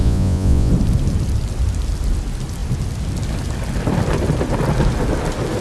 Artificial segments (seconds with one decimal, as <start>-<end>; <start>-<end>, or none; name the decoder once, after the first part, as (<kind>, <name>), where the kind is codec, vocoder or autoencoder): 0.0-0.7 (vocoder, Vocos)